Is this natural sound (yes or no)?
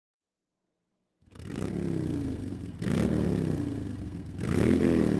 no